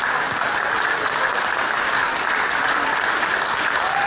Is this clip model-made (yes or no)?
no